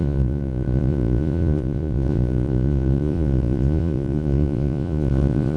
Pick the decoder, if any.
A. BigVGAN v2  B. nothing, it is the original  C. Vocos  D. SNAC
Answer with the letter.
C